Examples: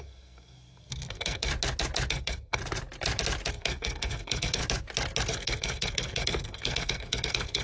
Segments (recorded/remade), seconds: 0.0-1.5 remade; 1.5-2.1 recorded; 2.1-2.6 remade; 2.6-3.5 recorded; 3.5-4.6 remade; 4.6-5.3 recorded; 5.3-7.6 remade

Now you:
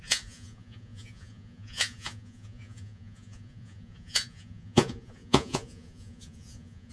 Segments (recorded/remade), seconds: 0.0-6.9 remade

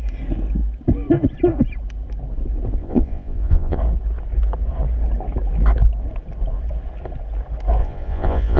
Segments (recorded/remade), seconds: 0.0-2.8 recorded; 2.8-3.8 remade; 3.8-7.8 recorded; 7.8-8.6 remade